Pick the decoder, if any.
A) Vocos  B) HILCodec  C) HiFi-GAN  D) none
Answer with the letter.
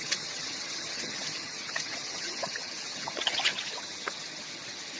C